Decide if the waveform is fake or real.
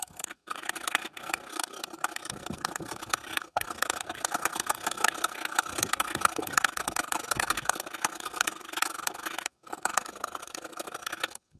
fake